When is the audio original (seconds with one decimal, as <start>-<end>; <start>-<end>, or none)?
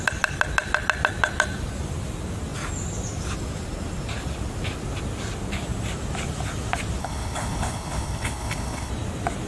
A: 0.0-7.0; 8.9-9.5